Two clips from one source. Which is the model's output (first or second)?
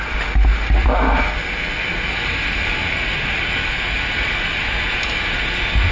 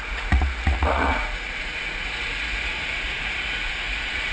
second